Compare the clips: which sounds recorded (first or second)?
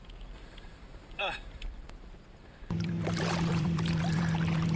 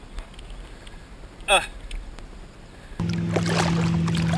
second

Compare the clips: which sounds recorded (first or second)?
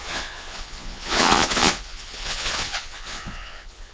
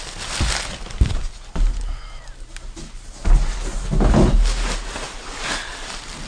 second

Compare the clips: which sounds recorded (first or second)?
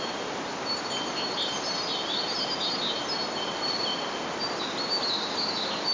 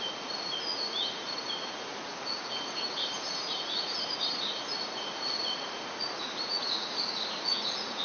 first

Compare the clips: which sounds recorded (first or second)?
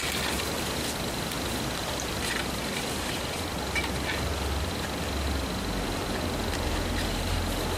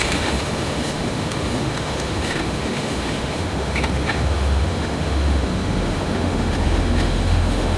first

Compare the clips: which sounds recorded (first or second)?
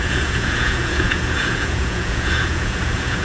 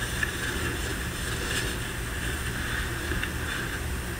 second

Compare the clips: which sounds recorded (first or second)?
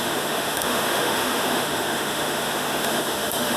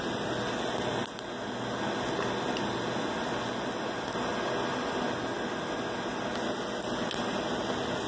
second